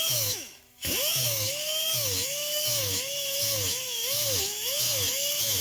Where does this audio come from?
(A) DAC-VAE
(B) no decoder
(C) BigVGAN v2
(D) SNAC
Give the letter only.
A